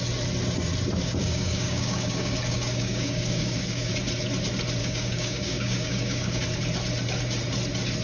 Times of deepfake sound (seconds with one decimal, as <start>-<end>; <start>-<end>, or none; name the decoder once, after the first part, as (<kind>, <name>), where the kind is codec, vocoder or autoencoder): 1.2-3.9 (codec, DAC); 4.8-6.4